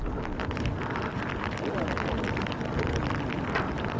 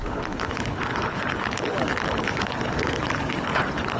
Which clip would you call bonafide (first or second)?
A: first